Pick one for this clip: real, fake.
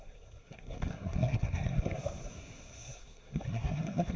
fake